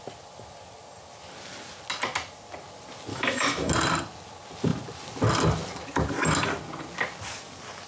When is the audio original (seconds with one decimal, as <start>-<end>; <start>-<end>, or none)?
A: 0.0-3.1; 3.7-7.9